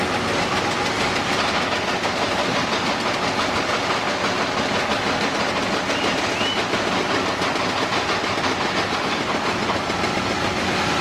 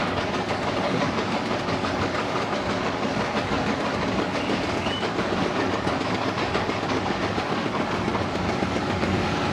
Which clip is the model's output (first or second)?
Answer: second